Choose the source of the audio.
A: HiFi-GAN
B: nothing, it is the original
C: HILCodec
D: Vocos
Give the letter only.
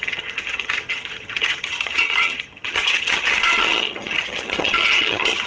A